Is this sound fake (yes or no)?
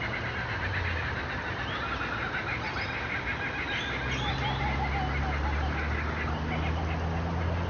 no